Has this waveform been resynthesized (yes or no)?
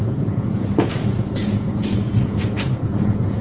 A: yes